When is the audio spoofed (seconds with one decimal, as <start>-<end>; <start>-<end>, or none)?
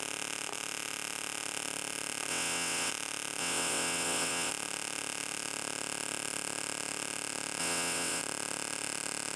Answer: 2.3-2.9; 3.4-4.5; 7.6-8.2